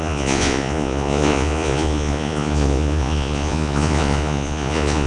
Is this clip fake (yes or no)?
yes